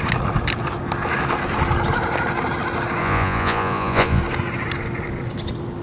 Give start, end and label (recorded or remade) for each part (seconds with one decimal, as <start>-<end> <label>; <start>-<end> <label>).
0.0-3.0 recorded; 3.0-4.2 remade; 4.2-5.8 recorded